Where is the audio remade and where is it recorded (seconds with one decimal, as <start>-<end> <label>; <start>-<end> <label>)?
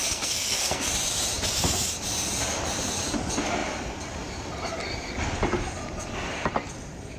0.0-0.9 remade; 0.9-7.2 recorded